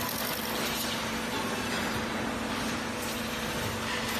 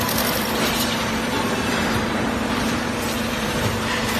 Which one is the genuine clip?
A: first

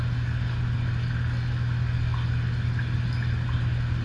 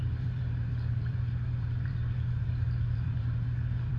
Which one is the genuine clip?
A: first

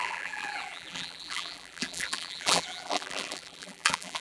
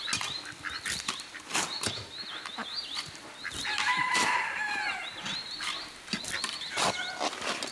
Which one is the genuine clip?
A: second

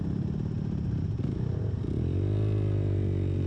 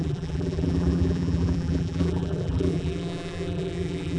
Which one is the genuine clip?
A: first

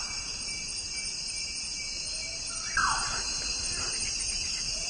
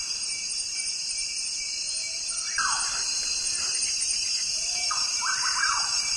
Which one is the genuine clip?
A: first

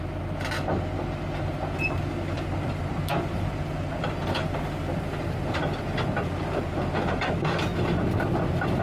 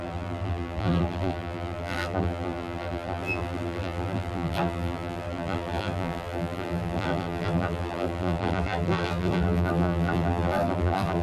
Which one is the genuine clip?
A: first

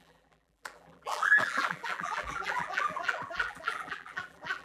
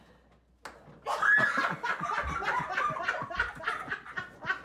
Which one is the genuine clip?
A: second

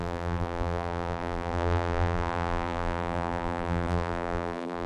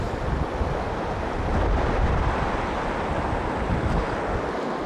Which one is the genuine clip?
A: second